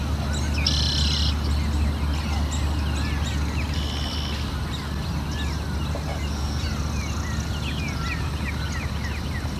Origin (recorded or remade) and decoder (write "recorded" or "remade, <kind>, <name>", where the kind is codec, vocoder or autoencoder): recorded